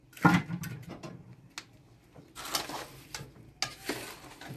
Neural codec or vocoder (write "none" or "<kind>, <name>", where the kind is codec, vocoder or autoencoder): none